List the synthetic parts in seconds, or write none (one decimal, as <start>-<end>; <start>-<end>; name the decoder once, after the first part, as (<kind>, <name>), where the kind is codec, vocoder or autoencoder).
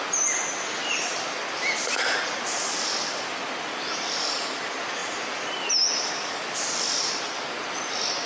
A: 5.0-7.2 (vocoder, BigVGAN v2)